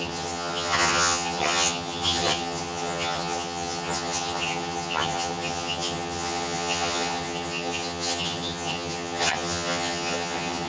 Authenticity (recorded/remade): remade